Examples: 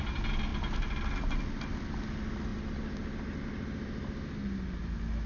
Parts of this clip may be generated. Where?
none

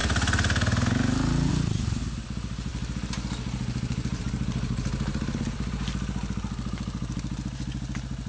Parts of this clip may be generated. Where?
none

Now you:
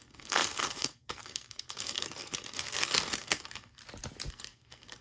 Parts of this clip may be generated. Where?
0.0-3.8 (codec, SNAC); 4.3-5.0

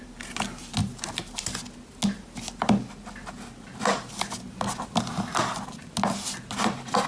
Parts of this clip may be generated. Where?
none